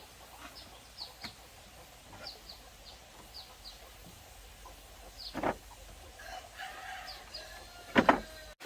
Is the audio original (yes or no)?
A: yes